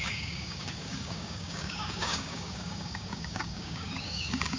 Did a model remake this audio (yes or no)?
yes